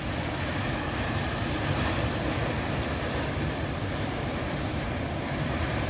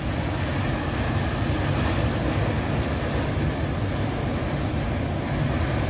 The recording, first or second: second